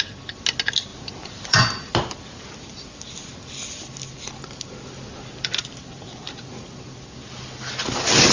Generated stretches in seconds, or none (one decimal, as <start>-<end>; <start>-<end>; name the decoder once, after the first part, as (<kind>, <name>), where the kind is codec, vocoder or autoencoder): 0.9-1.9 (vocoder, BigVGAN v2); 5.3-6.4